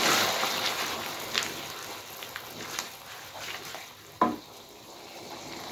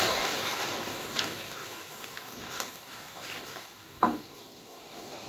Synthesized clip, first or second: second